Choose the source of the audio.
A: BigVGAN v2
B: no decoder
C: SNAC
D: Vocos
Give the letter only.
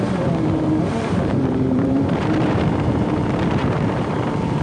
A